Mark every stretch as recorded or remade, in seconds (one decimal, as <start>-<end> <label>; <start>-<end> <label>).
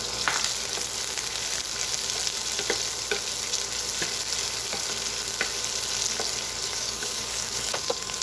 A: 0.0-6.7 recorded; 6.7-8.2 remade